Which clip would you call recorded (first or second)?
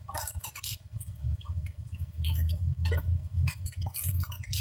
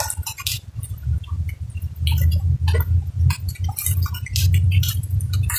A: second